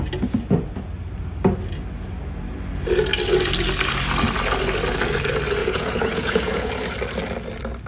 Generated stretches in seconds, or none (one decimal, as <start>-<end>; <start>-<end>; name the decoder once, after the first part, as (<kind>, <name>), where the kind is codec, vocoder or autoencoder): 5.6-6.7 (vocoder, Vocos)